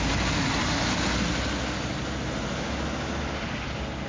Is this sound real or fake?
real